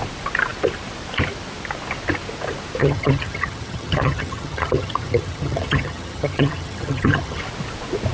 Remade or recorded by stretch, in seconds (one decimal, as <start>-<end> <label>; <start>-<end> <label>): 0.0-2.8 recorded; 2.8-7.4 remade; 7.4-8.1 recorded